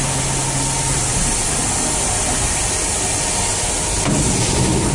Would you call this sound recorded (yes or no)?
yes